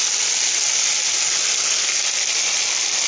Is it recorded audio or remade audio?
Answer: recorded